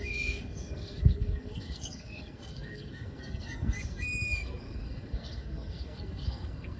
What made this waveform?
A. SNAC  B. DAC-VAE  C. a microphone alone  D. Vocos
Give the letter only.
A